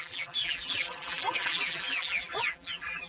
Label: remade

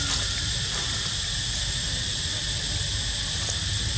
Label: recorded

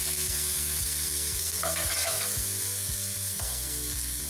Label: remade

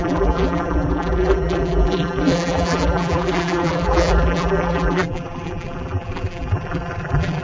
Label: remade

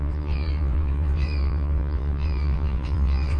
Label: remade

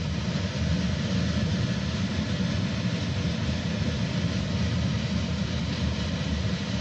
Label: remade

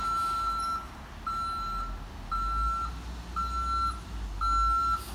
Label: recorded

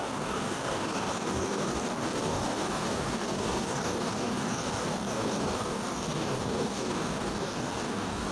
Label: remade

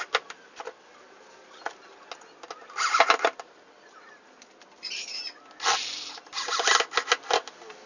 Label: recorded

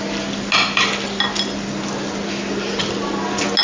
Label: recorded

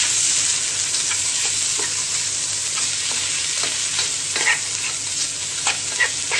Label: recorded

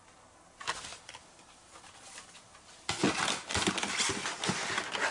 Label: recorded